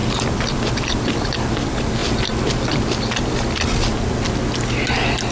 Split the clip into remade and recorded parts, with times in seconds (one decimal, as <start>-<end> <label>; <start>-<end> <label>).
0.0-2.0 remade; 2.0-5.3 recorded

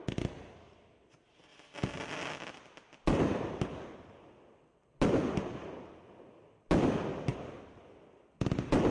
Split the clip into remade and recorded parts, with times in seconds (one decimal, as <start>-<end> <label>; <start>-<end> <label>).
0.0-8.9 recorded